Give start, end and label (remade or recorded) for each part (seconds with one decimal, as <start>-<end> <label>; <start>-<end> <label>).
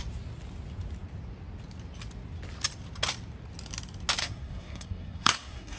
0.0-4.2 recorded; 4.2-5.8 remade